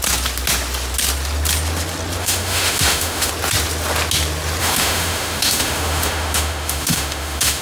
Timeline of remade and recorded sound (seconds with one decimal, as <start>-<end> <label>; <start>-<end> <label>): 0.0-2.2 recorded; 2.2-3.3 remade; 3.3-4.6 recorded; 4.6-7.6 remade